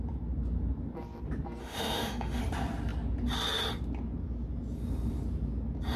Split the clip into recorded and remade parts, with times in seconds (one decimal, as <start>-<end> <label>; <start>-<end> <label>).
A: 0.0-1.6 recorded; 1.6-2.4 remade; 2.4-6.0 recorded